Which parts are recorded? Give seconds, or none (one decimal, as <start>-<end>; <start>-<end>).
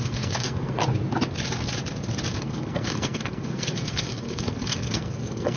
0.8-2.3